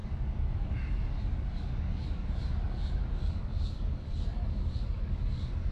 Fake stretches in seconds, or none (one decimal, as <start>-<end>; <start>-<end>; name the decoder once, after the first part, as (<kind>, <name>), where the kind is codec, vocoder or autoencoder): 0.0-5.7 (codec, DAC)